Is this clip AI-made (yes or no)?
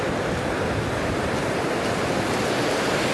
no